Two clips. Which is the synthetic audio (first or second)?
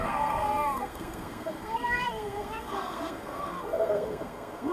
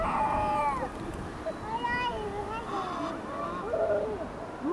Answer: first